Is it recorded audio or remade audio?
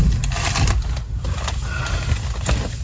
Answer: recorded